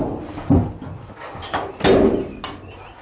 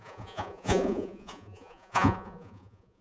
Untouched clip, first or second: first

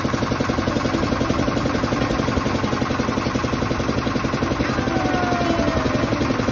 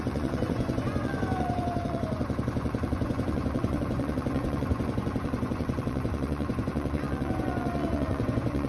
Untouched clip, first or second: first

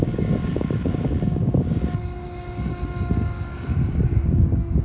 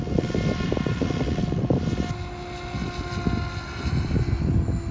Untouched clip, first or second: second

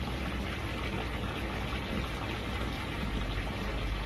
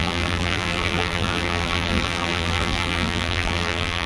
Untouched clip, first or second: first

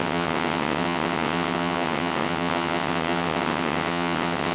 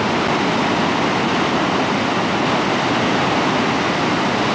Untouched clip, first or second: second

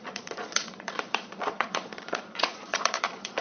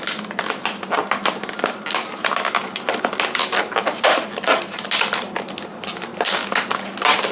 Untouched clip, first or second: second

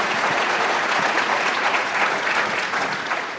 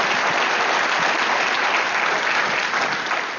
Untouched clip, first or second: second